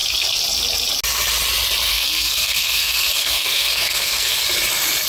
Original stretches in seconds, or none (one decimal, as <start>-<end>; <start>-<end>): 0.0-1.9; 4.4-5.1